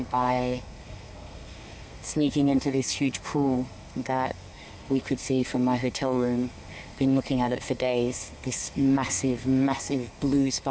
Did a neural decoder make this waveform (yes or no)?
yes